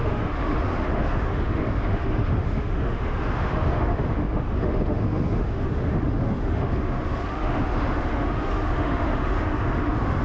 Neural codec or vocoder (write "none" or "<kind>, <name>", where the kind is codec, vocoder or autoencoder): autoencoder, DAC-VAE